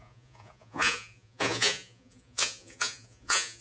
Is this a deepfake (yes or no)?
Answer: yes